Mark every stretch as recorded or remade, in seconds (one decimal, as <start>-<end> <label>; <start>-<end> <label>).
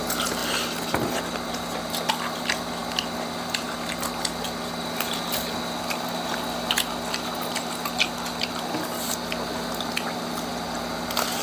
0.0-11.4 recorded